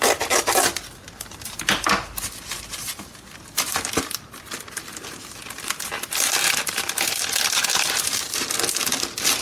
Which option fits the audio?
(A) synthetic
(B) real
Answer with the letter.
B